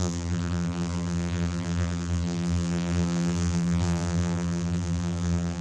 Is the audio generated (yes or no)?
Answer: yes